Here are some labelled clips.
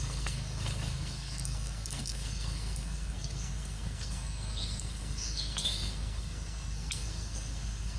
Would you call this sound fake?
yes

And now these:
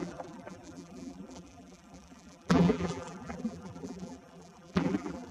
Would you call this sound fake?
yes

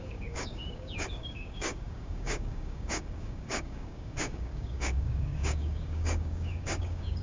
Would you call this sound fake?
yes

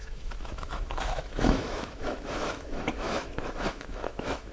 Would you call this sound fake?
yes